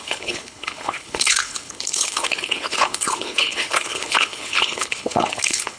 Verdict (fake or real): fake